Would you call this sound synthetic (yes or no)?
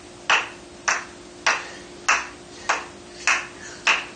no